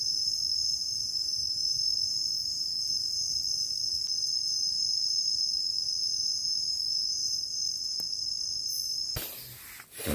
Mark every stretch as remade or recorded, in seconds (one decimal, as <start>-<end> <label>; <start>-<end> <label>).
0.0-3.3 recorded; 3.3-3.8 remade; 3.8-7.2 recorded; 7.2-9.0 remade; 9.0-10.1 recorded